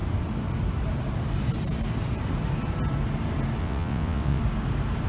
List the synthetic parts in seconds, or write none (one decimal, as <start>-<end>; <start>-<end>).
3.6-4.4